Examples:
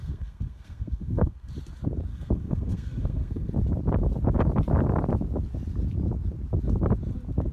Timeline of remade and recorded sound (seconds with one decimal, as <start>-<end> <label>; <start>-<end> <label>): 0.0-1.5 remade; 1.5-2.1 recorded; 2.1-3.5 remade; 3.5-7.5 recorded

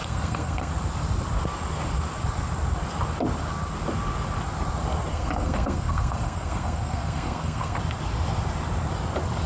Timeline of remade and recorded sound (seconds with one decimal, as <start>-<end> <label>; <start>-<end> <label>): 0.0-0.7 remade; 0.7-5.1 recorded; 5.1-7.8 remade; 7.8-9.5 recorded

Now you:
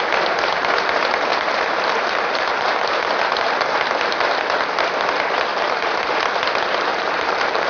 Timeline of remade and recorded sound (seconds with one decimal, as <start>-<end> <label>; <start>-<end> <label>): 0.0-1.3 recorded; 1.3-3.1 remade; 3.1-5.5 recorded; 5.5-6.1 remade; 6.1-6.9 recorded; 6.9-7.7 remade

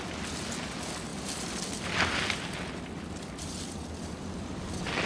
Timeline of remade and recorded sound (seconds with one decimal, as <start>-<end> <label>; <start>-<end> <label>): 0.0-5.1 recorded